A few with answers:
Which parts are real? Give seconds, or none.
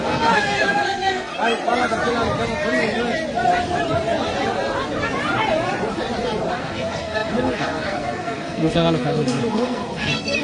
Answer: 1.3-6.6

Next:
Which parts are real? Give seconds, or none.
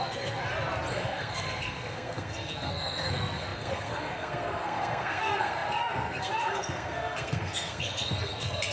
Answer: 0.4-0.9